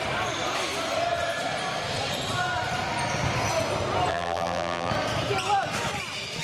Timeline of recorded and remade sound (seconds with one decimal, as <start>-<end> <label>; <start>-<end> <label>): 0.0-4.1 recorded; 4.1-4.9 remade; 4.9-6.4 recorded